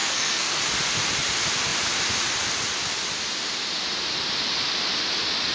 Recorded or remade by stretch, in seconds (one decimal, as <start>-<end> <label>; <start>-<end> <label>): 0.0-0.6 remade; 0.6-5.5 recorded